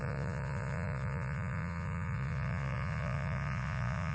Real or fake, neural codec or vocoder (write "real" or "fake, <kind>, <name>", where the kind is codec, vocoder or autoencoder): fake, vocoder, Vocos